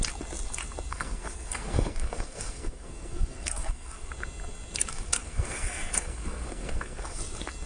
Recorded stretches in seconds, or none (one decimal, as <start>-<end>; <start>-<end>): 0.0-0.9; 4.1-4.9; 7.2-7.7